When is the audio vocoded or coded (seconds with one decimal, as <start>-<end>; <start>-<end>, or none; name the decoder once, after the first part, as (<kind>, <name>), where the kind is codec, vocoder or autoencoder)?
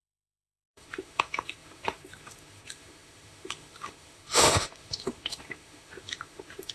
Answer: 0.0-6.7 (autoencoder, DAC-VAE)